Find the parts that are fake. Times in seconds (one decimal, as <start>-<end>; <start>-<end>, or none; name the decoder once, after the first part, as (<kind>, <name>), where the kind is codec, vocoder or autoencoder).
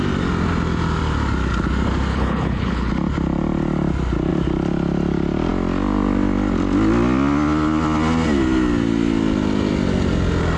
2.1-2.9 (codec, HILCodec)